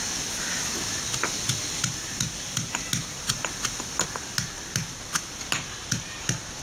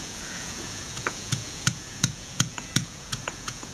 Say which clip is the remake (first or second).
second